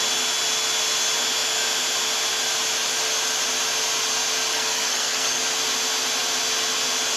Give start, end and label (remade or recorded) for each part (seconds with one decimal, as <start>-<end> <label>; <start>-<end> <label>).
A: 0.0-4.5 recorded; 4.5-5.4 remade; 5.4-7.2 recorded